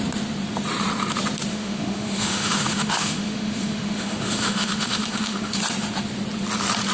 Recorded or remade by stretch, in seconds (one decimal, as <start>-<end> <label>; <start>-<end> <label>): 0.0-1.5 recorded; 1.5-5.6 remade; 5.6-6.9 recorded